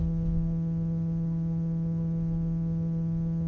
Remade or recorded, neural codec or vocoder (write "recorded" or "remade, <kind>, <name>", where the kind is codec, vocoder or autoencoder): recorded